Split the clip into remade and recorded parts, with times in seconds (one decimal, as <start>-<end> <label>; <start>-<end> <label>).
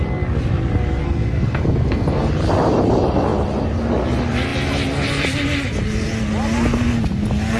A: 0.0-1.0 recorded; 1.0-2.3 remade; 2.3-7.6 recorded